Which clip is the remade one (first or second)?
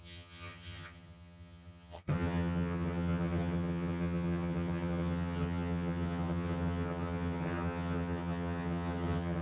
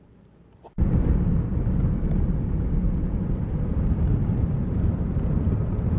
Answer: first